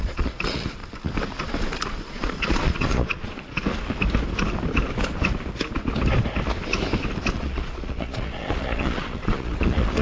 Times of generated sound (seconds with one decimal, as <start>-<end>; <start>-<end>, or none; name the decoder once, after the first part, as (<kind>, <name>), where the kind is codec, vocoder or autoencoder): 0.0-0.8 (vocoder, Vocos); 2.1-3.5; 7.3-10.0